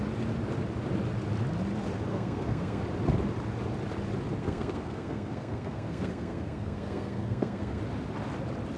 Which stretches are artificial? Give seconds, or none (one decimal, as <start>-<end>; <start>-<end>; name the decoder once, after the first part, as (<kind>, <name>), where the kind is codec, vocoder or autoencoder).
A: 2.1-2.8 (codec, SNAC); 4.4-7.8